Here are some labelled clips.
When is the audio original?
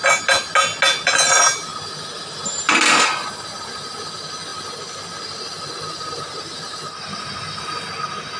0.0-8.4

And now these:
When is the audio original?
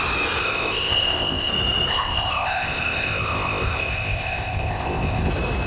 0.0-0.4; 1.5-1.9; 5.3-5.7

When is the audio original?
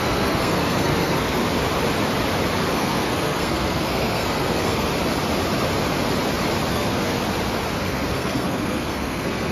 1.4-2.7; 4.9-6.7; 7.2-7.8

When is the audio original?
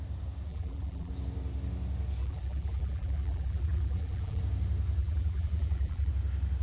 0.0-0.5; 1.1-2.2; 4.4-5.0; 6.1-6.6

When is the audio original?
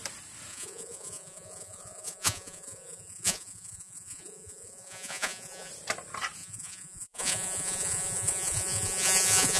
0.0-0.5; 5.7-6.4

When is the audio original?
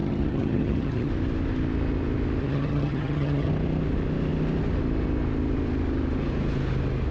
1.1-2.4; 3.5-7.1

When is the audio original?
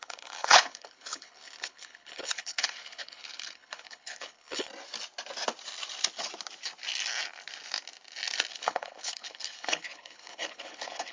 4.7-8.5